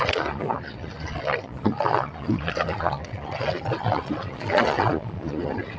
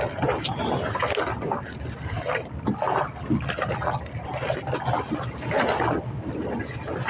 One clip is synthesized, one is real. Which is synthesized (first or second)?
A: first